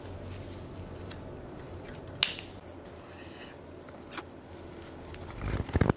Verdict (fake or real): real